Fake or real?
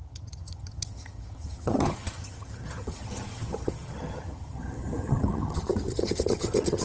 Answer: fake